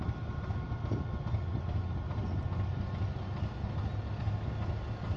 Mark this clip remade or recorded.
recorded